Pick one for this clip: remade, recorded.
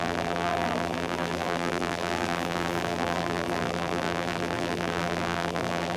remade